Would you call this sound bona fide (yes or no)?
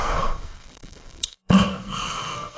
no